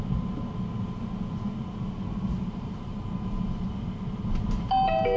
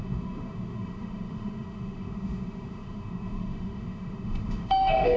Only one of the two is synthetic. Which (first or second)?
second